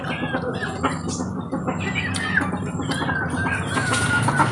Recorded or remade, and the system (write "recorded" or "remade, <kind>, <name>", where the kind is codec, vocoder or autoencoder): recorded